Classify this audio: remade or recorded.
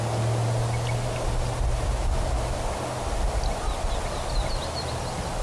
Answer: recorded